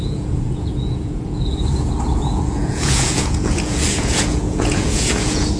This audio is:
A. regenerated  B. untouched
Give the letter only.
A